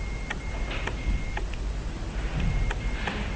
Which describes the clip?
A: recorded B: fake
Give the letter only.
A